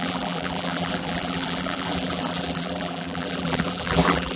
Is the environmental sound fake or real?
fake